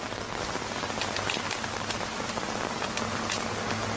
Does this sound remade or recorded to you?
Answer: recorded